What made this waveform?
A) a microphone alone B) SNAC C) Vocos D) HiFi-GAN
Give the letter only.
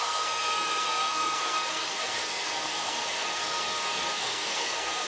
B